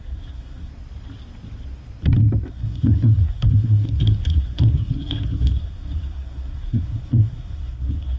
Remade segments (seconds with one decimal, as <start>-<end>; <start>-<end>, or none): 0.0-0.7; 2.5-8.2